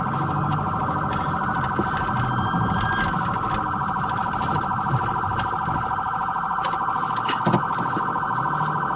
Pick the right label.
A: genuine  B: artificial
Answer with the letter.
A